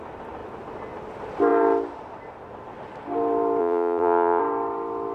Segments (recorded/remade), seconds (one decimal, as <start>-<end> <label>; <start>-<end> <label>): 0.0-3.6 recorded; 3.6-4.4 remade; 4.4-5.1 recorded